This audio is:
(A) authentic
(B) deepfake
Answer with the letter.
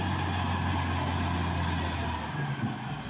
A